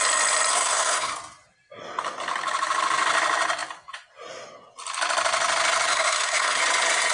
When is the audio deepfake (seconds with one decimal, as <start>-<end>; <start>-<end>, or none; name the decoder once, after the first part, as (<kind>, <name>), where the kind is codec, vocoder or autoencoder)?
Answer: 0.5-1.1 (codec, SNAC); 5.9-6.6